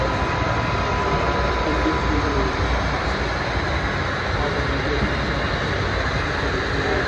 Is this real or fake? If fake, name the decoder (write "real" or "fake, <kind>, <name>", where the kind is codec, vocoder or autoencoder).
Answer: fake, vocoder, BigVGAN v2